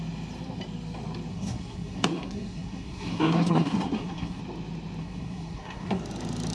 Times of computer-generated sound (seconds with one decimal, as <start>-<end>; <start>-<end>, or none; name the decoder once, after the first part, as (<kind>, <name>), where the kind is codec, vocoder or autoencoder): 1.3-4.4 (codec, SNAC); 5.0-6.0